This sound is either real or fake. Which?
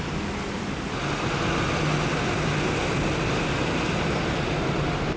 real